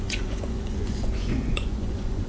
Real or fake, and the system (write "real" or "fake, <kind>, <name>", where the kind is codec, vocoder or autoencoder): fake, vocoder, Vocos